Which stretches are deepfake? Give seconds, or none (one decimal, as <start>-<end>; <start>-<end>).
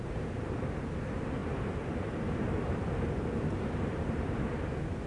1.4-4.5